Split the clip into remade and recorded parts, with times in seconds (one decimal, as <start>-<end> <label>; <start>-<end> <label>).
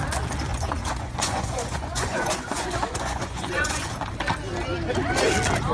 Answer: 0.0-0.5 recorded; 0.5-3.9 remade; 3.9-5.7 recorded